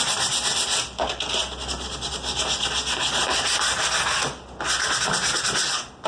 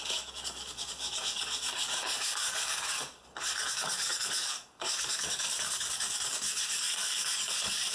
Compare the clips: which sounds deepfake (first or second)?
second